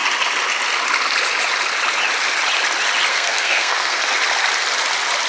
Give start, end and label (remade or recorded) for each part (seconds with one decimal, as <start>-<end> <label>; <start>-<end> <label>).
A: 0.0-3.1 recorded; 3.1-4.1 remade; 4.1-5.3 recorded